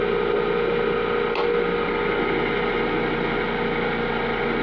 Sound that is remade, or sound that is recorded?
recorded